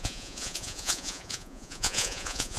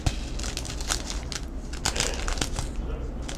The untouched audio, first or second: second